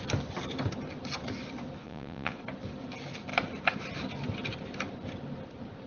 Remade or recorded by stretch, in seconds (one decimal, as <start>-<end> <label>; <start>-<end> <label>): 0.0-1.8 recorded; 1.8-2.4 remade; 2.4-5.9 recorded